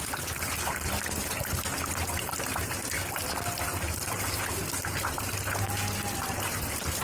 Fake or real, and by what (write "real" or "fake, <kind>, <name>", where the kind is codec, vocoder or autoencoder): real